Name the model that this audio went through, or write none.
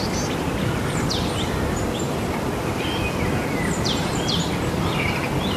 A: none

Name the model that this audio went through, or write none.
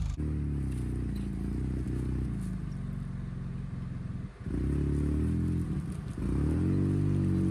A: none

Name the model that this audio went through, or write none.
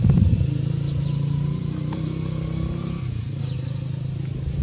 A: none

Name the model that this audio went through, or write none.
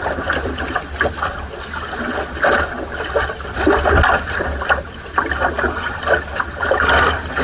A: none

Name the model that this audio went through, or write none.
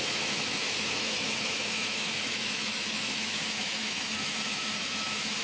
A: autoencoder, DAC-VAE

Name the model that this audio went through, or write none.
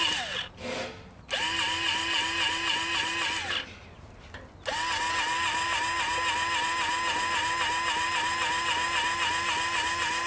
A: none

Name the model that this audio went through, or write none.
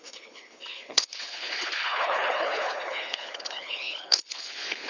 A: codec, HILCodec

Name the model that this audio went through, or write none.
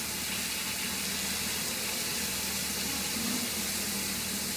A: none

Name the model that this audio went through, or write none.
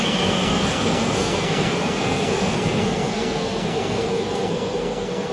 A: codec, SNAC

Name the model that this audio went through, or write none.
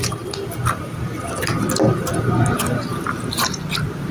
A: none